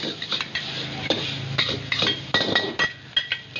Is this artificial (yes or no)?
no